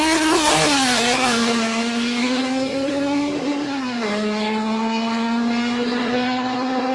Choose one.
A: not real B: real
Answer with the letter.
A